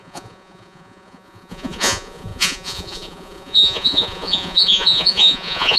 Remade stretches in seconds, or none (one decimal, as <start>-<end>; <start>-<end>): 0.0-5.8